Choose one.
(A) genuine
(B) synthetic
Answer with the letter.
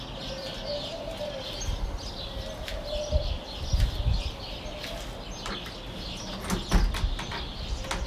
A